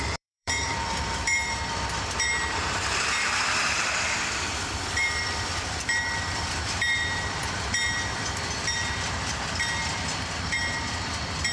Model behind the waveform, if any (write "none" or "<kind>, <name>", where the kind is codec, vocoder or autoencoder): vocoder, BigVGAN v2